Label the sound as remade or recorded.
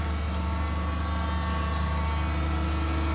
recorded